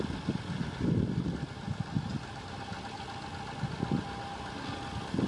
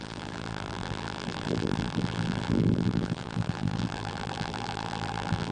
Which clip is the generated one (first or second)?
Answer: second